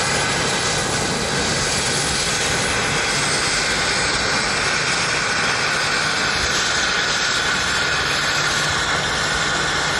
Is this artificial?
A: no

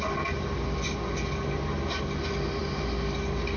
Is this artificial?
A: no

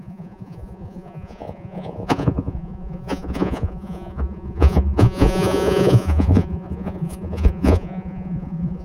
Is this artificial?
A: yes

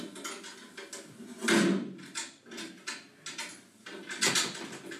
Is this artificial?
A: no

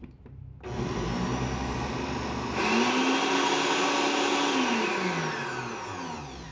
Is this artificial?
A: no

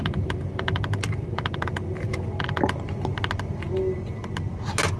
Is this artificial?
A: no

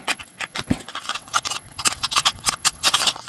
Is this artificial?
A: yes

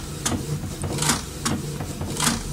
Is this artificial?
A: no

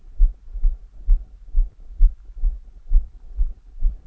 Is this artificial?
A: no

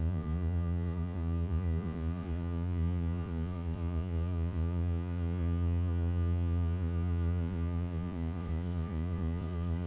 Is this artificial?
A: yes